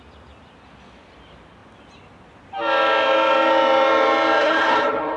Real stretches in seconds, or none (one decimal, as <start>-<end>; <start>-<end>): 0.0-4.4